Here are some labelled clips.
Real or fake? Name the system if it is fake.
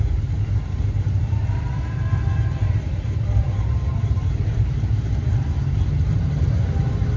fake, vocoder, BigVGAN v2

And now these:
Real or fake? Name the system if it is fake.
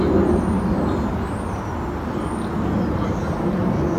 real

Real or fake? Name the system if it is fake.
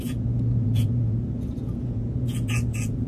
fake, vocoder, Vocos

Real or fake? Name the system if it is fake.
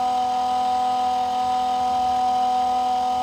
real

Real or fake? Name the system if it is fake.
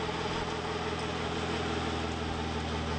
real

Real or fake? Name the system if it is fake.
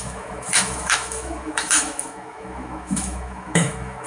fake, autoencoder, DAC-VAE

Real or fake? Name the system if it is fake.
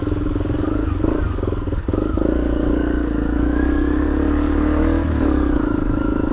fake, codec, DAC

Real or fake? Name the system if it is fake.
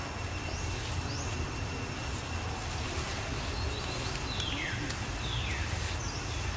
real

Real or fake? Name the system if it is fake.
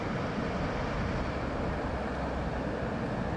real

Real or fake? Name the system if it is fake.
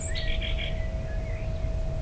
real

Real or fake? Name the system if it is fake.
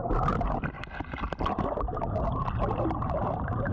real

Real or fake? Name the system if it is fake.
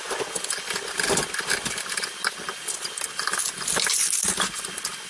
real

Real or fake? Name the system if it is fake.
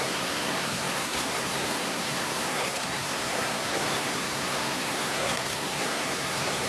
fake, codec, SNAC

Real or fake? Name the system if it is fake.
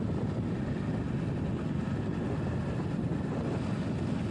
real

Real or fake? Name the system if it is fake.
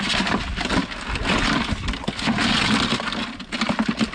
real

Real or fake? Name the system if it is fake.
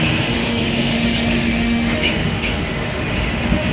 fake, autoencoder, DAC-VAE